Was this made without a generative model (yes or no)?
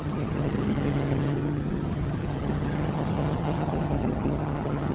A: no